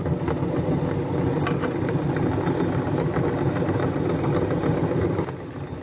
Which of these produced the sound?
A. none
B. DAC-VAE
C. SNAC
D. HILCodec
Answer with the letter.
A